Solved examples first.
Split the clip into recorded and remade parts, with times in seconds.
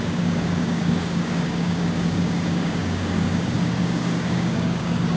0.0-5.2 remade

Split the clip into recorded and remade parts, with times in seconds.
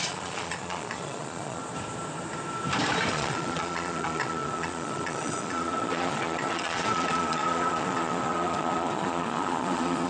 0.0-1.6 remade; 1.6-3.1 recorded; 3.1-10.1 remade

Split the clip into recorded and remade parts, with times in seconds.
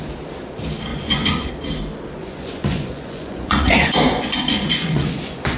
0.0-0.9 recorded; 0.9-1.5 remade; 1.5-2.2 recorded; 2.2-5.6 remade